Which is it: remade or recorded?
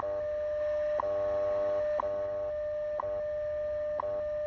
recorded